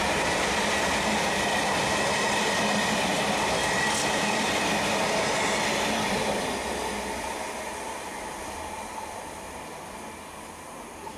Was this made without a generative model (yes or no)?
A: no